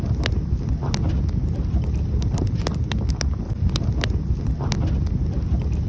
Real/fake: real